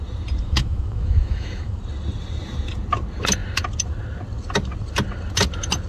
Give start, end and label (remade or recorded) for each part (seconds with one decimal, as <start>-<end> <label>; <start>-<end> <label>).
0.0-0.4 recorded; 0.4-1.8 remade; 1.8-5.9 recorded